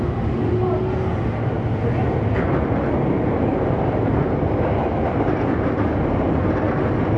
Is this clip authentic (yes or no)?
yes